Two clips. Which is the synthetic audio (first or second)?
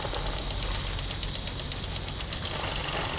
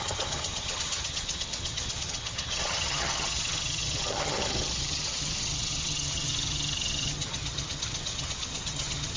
second